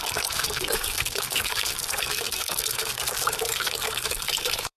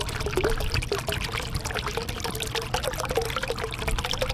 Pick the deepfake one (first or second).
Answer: first